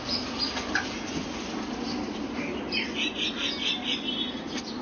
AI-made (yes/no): no